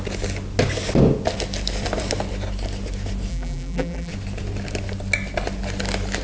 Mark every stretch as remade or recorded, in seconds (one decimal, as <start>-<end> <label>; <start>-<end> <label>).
0.0-3.3 recorded; 3.3-4.1 remade; 4.1-6.2 recorded